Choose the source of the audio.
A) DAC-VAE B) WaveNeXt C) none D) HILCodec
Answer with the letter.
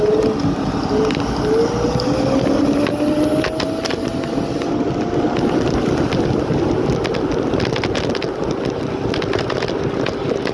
C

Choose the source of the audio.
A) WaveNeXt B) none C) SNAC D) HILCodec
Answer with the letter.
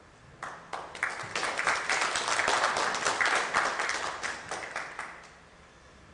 B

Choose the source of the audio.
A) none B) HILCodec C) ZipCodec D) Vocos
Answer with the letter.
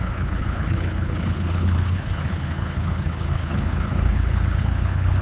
B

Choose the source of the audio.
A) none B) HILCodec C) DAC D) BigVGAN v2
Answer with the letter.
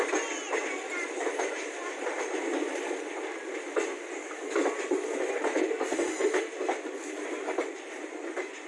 A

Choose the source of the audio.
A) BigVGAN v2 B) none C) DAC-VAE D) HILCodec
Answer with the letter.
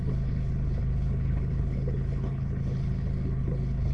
D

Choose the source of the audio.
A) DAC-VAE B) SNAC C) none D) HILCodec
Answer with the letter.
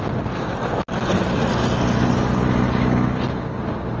C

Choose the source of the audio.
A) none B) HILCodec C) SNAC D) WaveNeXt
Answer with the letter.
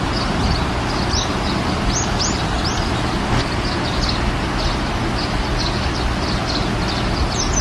A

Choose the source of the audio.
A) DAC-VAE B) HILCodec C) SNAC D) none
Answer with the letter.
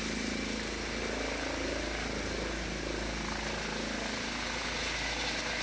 D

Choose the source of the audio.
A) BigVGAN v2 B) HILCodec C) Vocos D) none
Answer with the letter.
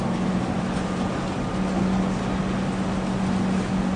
D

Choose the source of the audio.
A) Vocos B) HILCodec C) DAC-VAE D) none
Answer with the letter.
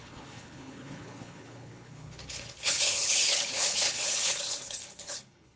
B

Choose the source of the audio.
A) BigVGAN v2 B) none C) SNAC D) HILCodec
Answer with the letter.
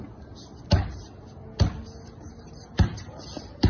B